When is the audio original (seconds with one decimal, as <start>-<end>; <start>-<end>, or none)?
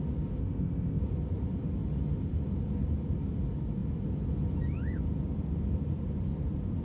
0.0-0.4; 1.0-6.8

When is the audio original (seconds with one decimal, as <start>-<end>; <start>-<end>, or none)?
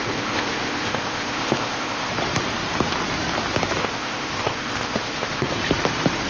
2.1-3.8; 5.5-6.3